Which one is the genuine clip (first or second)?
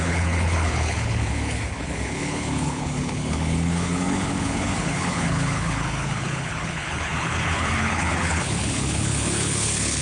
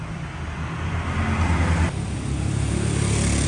second